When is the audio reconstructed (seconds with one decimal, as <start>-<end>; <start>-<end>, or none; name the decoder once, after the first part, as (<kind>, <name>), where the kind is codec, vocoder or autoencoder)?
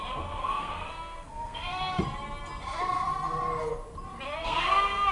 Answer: 0.4-2.0 (codec, SNAC); 4.4-5.1